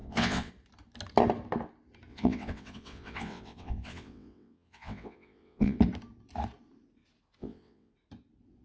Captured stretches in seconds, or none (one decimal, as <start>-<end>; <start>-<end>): 0.5-2.1; 5.8-7.4; 7.9-8.6